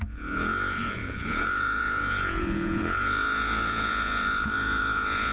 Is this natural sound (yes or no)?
no